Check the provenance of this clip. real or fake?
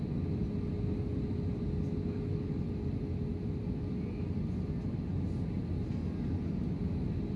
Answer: real